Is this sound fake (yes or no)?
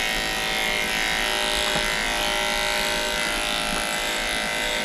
no